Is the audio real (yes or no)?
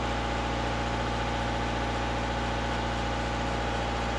yes